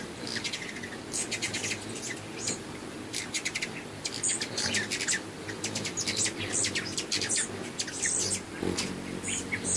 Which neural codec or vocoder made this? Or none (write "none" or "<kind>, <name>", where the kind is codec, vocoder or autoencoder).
none